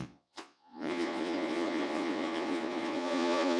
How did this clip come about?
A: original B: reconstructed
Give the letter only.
B